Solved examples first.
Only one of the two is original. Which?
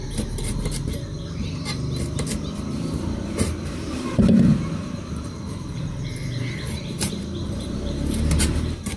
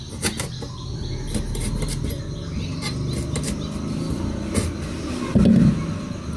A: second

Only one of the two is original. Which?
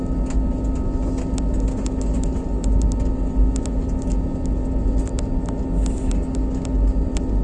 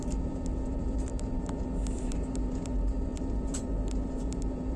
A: first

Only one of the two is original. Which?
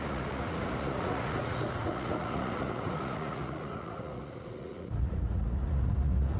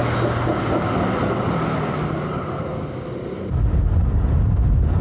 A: second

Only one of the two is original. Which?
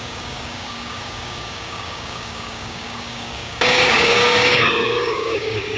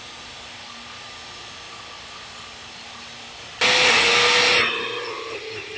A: second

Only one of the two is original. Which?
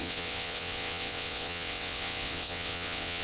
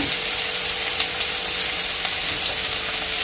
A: second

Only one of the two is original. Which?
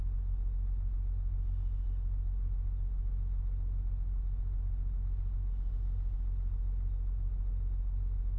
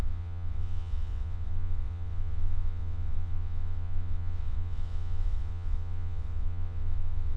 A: first